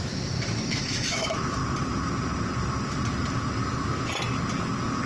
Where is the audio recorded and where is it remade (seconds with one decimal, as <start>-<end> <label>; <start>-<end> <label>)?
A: 0.0-1.6 remade; 1.6-5.1 recorded